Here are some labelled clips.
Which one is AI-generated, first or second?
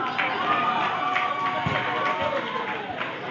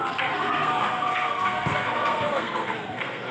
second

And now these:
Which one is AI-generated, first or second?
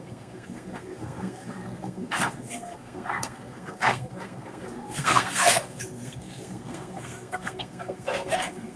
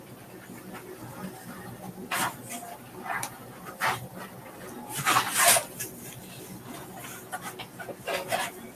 first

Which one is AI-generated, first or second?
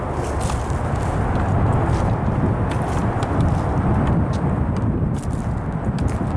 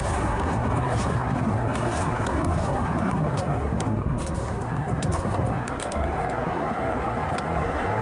second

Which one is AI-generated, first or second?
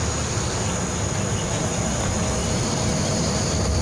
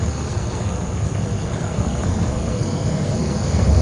second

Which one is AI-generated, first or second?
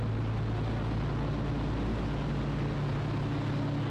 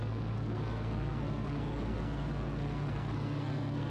second